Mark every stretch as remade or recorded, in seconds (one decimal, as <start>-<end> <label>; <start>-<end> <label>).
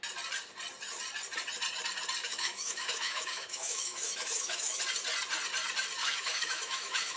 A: 0.0-2.2 recorded; 2.2-4.8 remade; 4.8-6.0 recorded; 6.0-7.2 remade